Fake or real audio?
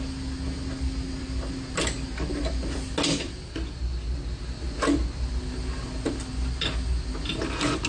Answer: real